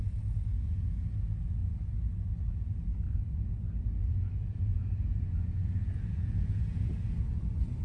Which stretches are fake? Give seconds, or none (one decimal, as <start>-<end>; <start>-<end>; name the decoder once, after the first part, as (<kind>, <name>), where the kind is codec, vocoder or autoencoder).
0.0-1.0 (vocoder, Vocos); 4.5-6.9